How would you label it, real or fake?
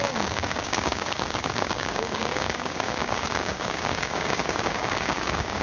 fake